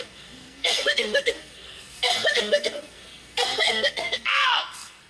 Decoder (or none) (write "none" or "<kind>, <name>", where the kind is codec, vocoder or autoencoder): codec, SNAC